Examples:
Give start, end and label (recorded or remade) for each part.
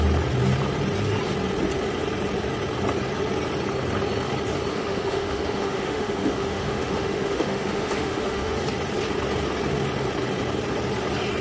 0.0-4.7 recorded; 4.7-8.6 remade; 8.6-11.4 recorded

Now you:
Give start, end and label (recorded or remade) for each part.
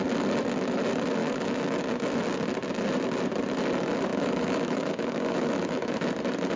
0.0-1.2 recorded; 1.2-1.8 remade; 1.8-4.1 recorded; 4.1-6.1 remade; 6.1-6.6 recorded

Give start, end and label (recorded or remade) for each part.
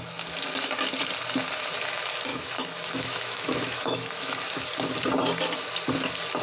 0.0-2.3 recorded; 2.3-4.6 remade; 4.6-6.4 recorded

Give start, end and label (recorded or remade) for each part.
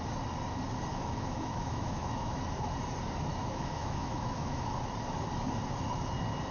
0.0-0.9 recorded; 0.9-2.4 remade; 2.4-3.4 recorded; 3.4-4.7 remade; 4.7-6.5 recorded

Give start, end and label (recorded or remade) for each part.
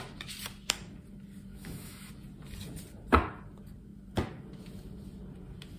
0.0-1.5 recorded; 1.5-2.1 remade; 2.1-5.8 recorded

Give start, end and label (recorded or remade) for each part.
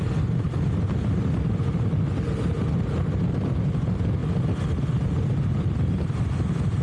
0.0-6.8 recorded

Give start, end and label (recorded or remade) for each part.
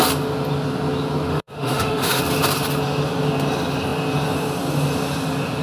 0.0-1.3 recorded; 1.3-2.2 remade; 2.2-5.6 recorded